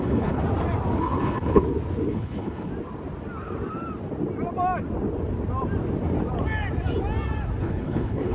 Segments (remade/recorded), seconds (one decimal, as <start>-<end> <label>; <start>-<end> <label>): 0.0-0.4 remade; 0.4-1.0 recorded; 1.0-1.6 remade; 1.6-2.1 recorded; 2.1-2.7 remade; 2.7-7.6 recorded; 7.6-8.3 remade